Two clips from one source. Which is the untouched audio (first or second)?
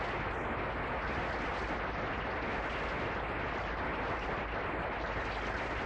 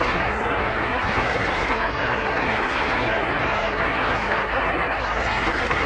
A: first